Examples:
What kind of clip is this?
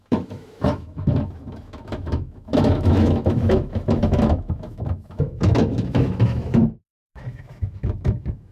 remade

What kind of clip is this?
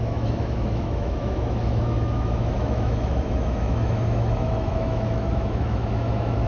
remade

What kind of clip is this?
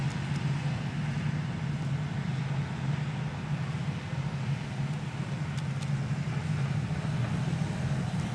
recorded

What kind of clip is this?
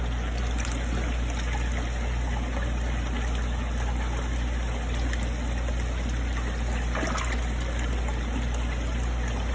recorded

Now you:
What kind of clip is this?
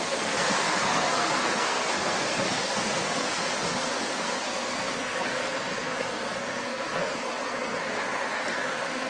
remade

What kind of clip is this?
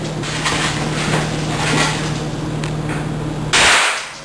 recorded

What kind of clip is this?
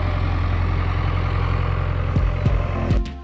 recorded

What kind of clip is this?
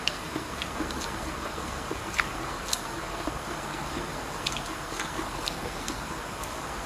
remade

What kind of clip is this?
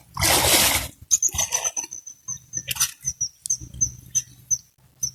recorded